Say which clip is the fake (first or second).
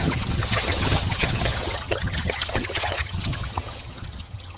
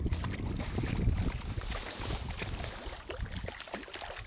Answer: first